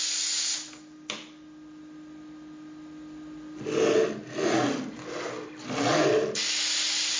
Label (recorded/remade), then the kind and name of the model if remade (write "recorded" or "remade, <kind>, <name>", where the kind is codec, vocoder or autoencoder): recorded